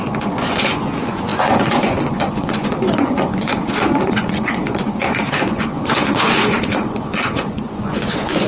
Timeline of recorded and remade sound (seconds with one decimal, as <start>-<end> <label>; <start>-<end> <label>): 0.0-8.5 remade